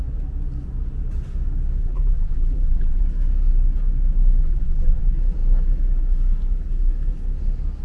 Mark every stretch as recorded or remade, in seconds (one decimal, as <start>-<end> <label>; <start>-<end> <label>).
0.0-1.8 recorded; 1.8-3.0 remade; 3.0-4.4 recorded; 4.4-5.0 remade; 5.0-7.8 recorded